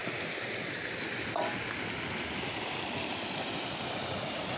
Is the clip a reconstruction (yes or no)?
no